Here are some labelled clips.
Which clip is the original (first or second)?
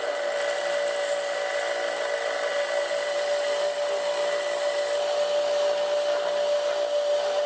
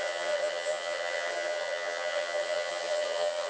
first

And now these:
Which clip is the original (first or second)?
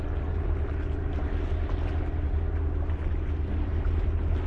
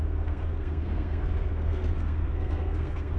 first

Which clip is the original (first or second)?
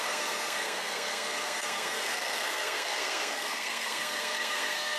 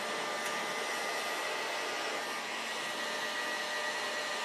second